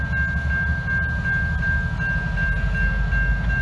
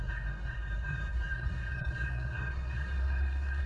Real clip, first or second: first